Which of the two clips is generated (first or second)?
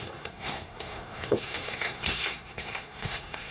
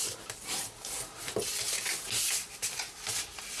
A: first